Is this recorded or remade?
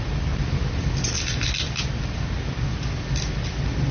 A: recorded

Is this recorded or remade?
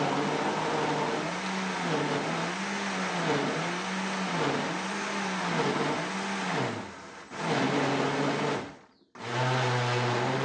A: recorded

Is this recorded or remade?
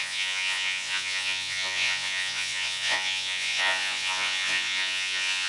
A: remade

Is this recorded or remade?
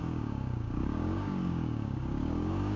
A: remade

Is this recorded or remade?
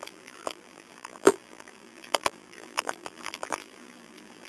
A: remade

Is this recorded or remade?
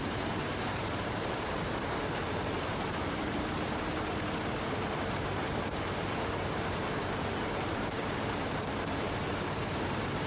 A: remade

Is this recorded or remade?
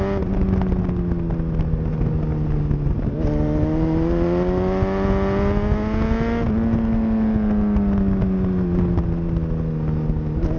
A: recorded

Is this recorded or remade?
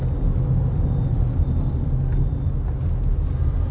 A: recorded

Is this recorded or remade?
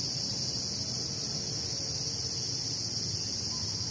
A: recorded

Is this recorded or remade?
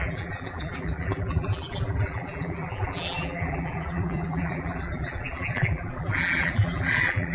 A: remade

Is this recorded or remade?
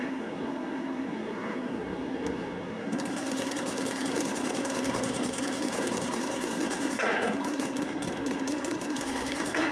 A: remade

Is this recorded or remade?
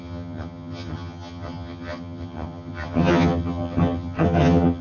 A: remade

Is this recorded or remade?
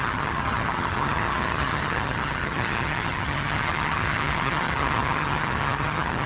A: remade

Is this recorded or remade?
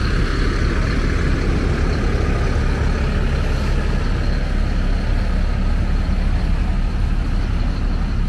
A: recorded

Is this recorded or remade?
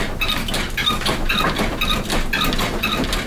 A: recorded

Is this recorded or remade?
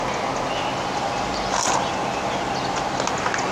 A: recorded